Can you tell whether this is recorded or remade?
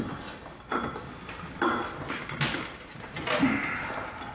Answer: recorded